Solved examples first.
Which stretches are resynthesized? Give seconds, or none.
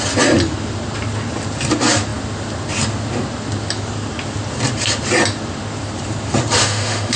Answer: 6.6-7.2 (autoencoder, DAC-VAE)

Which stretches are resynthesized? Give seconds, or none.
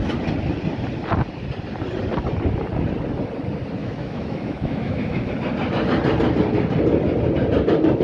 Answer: 3.8-5.3 (autoencoder, DAC-VAE)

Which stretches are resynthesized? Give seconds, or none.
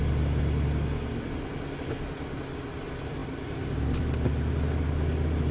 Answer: none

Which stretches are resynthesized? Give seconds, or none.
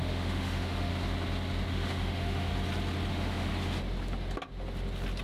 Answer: 0.0-0.9 (autoencoder, DAC-VAE); 1.7-2.5; 3.1-3.5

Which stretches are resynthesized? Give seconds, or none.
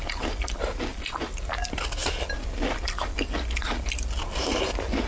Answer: none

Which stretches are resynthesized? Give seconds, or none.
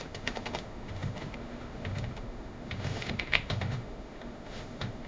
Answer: 0.0-5.1 (autoencoder, DAC-VAE)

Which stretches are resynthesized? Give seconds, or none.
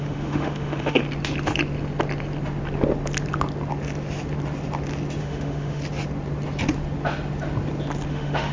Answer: 0.0-1.0 (autoencoder, DAC-VAE); 5.2-5.8; 8.1-8.5